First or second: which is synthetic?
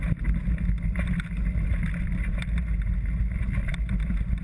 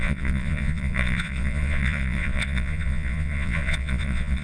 second